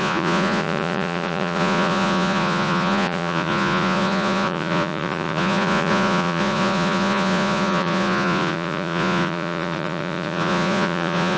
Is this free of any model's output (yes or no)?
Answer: no